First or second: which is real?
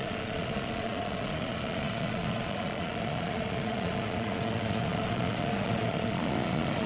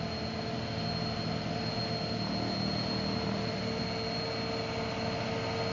second